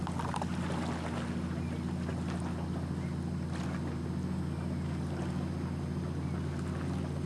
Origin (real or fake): real